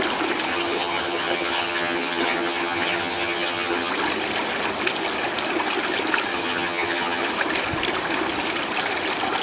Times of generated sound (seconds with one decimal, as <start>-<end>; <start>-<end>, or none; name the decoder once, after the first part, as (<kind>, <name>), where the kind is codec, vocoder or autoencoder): 0.5-3.9 (vocoder, HiFi-GAN); 6.3-7.3